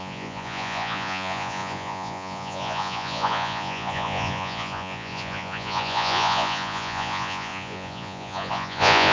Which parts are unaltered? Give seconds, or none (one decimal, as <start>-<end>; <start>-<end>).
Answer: none